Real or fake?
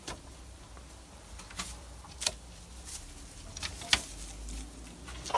real